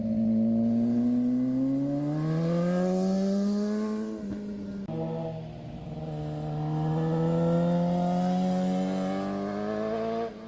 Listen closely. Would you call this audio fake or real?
real